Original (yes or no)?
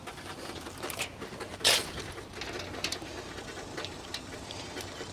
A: yes